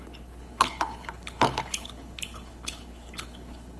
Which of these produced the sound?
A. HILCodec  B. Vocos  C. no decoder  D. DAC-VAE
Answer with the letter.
A